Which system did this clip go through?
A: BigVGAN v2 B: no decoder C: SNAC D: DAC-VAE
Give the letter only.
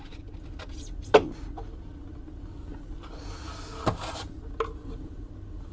B